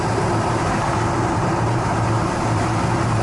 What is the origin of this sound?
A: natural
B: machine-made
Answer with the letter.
B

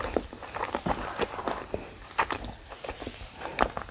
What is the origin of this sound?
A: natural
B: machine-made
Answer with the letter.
A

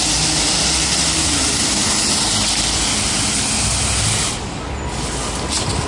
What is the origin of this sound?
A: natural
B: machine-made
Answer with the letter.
A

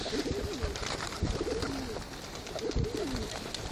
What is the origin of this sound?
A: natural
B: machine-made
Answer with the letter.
A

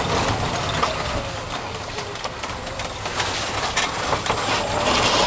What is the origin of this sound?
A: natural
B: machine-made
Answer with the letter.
A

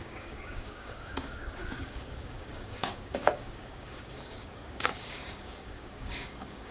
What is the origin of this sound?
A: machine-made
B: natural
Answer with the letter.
A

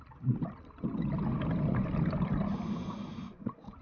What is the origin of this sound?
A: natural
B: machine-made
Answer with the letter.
A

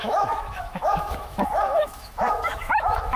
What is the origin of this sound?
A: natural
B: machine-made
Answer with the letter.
B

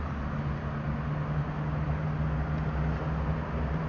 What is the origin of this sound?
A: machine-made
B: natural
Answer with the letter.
B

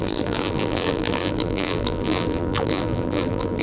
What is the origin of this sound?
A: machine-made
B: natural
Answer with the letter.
A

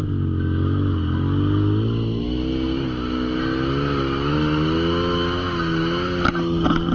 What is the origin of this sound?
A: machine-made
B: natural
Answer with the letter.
B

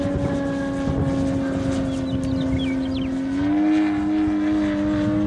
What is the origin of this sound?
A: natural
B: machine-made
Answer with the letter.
A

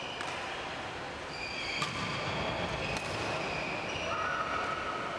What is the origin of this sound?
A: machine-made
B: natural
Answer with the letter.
B